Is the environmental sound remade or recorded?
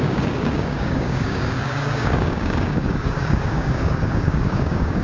remade